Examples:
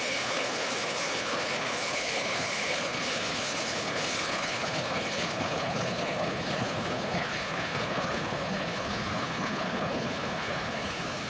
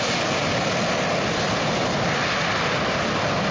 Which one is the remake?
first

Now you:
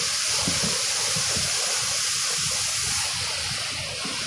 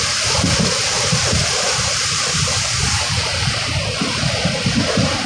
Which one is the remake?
second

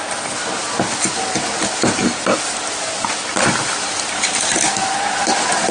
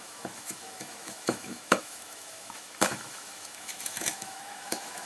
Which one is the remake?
second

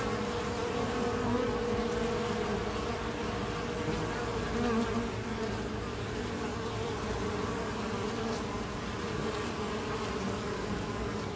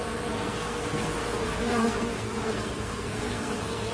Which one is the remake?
second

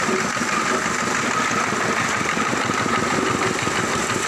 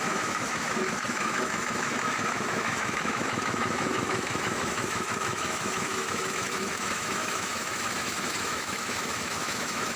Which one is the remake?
second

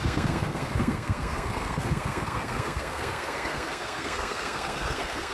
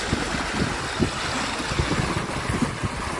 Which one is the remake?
first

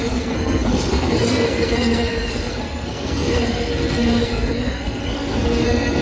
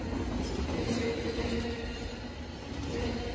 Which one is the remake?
first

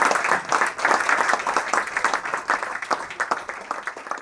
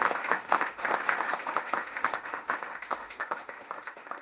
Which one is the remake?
second